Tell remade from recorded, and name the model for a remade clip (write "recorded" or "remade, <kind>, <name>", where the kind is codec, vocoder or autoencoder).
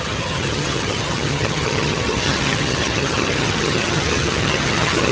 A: remade, vocoder, HiFi-GAN